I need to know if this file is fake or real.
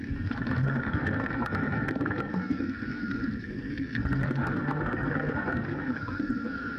fake